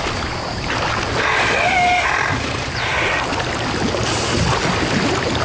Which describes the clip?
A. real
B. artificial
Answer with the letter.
A